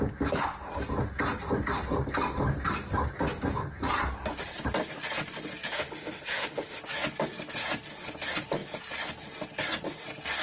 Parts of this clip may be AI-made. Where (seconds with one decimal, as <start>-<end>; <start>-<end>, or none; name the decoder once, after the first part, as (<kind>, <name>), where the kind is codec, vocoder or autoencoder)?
5.7-6.8 (autoencoder, DAC-VAE)